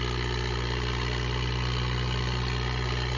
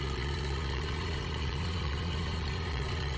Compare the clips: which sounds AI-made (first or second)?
second